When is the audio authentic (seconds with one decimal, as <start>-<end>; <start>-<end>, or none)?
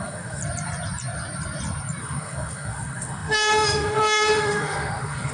0.4-2.0